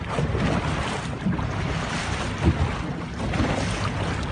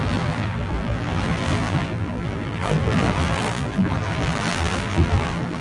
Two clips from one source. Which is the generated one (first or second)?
second